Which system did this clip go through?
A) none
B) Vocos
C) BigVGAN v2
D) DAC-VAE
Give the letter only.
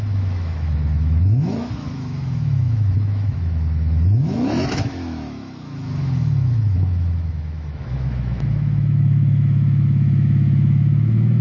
D